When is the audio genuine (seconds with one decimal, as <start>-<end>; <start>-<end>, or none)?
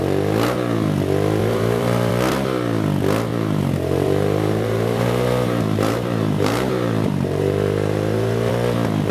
0.0-1.4; 2.1-3.3; 8.5-9.1